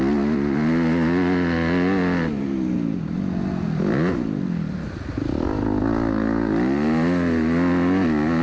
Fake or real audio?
real